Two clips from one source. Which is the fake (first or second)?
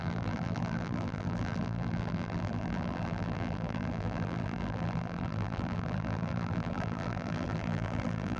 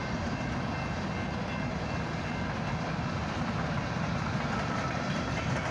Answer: first